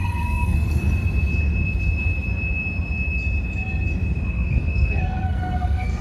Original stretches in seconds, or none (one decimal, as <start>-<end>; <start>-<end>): 0.8-4.3